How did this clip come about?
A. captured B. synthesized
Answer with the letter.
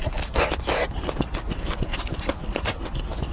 A